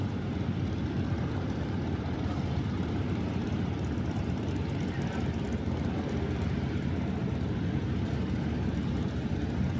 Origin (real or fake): fake